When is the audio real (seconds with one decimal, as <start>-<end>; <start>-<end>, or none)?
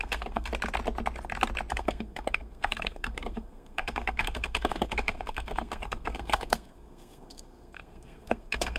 0.5-1.7